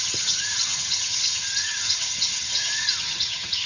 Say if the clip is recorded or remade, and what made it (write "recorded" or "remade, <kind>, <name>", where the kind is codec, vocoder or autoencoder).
remade, vocoder, HiFi-GAN